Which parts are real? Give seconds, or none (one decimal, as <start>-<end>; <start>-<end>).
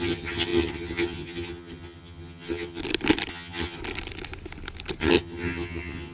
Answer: 2.8-3.3; 3.8-5.0